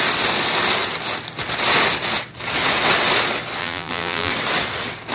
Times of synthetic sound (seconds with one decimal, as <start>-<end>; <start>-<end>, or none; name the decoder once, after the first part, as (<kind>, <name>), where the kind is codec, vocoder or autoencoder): 3.6-4.3 (vocoder, BigVGAN v2)